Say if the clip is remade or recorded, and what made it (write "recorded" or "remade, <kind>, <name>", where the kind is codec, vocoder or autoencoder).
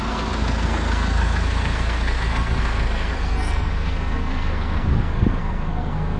remade, codec, SNAC